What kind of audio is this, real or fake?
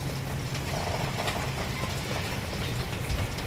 real